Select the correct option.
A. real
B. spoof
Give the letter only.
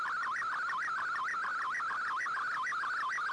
A